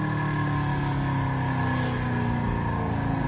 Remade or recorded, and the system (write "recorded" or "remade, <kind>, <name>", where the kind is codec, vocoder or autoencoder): recorded